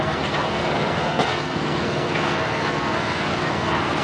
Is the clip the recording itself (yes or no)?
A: no